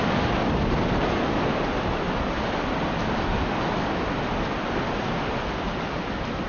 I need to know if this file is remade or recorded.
recorded